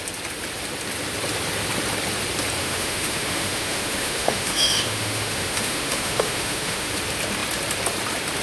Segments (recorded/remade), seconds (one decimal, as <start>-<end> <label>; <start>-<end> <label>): 0.0-2.6 recorded; 2.6-6.9 remade; 6.9-8.4 recorded